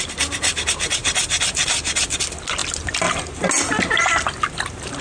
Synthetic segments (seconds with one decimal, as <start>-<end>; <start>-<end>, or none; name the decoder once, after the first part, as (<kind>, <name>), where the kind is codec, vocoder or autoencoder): 1.0-2.2 (vocoder, BigVGAN v2)